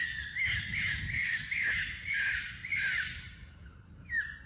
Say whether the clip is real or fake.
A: real